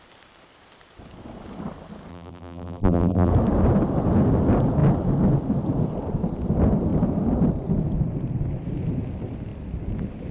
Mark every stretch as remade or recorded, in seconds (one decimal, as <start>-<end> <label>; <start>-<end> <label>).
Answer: 0.0-2.1 recorded; 2.1-3.3 remade; 3.3-10.3 recorded